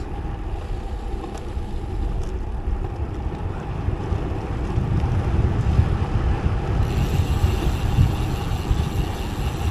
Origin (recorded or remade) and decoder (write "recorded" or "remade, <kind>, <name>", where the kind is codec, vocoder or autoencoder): recorded